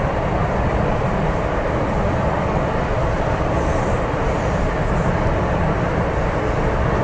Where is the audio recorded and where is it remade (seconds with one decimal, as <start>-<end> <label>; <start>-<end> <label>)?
0.0-0.7 recorded; 0.7-1.2 remade; 1.2-7.0 recorded